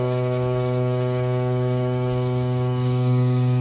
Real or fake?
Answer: fake